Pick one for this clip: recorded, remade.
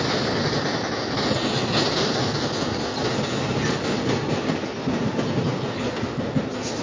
recorded